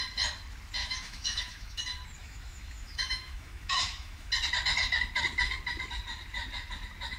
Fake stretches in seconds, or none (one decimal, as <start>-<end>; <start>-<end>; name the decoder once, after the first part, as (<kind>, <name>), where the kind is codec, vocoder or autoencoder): 0.8-1.8 (autoencoder, DAC-VAE); 2.2-4.3